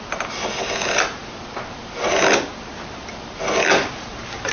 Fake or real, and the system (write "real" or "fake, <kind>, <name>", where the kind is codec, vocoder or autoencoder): real